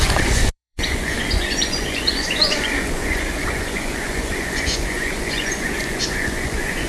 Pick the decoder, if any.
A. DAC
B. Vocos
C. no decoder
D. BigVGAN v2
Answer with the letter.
B